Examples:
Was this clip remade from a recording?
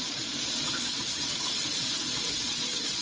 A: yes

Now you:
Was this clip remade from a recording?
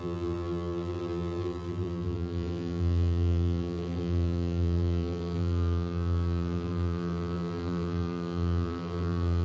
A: yes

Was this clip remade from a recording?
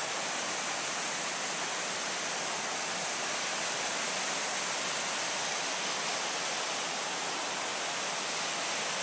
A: no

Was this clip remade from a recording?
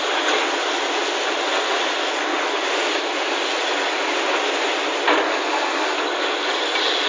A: no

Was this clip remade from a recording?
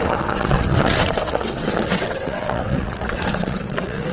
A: yes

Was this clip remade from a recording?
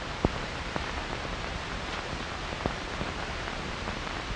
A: yes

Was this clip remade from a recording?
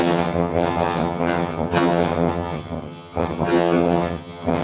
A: yes